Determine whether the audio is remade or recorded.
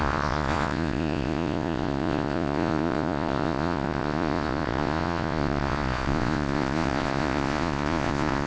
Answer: remade